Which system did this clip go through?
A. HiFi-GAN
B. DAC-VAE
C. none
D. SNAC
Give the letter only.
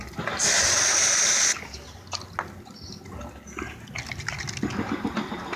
C